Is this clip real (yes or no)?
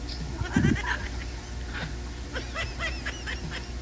yes